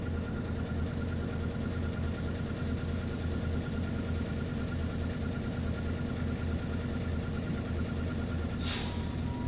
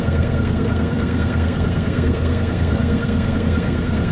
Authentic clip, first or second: first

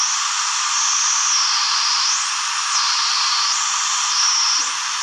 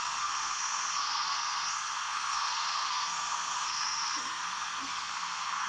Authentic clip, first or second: first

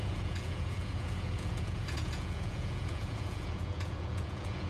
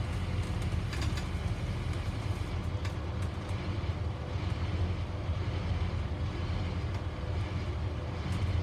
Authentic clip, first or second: second